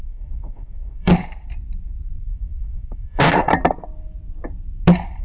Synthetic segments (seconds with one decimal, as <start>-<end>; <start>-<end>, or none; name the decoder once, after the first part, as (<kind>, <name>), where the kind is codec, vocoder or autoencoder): 0.0-1.1 (codec, SNAC); 2.2-3.5